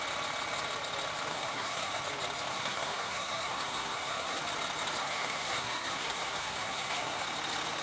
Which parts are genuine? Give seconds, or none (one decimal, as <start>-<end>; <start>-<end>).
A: 0.0-1.3; 2.0-2.5; 4.4-5.0; 7.2-7.8